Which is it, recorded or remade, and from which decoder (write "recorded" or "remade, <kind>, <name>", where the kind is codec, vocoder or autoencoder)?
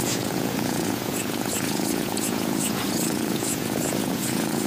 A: remade, vocoder, Vocos